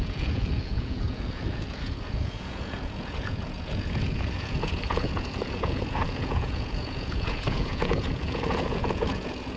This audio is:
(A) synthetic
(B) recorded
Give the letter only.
A